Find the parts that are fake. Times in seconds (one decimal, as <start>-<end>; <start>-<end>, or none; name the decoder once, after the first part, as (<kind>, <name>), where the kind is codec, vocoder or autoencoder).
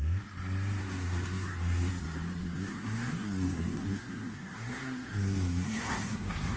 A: 0.8-1.9 (codec, SNAC); 2.4-6.6